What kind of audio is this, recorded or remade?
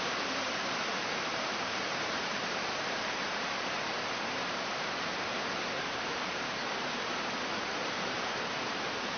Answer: remade